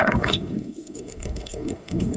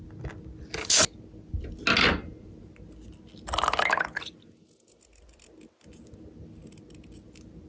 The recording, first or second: second